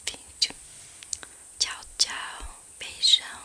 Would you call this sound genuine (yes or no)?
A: yes